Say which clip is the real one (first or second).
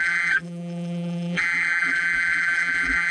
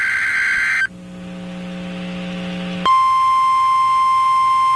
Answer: second